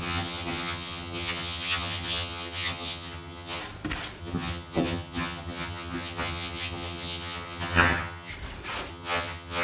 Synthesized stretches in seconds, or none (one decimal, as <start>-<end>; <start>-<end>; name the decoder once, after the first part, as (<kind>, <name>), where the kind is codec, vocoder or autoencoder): 0.0-3.6 (vocoder, HiFi-GAN); 4.2-8.3; 8.9-9.6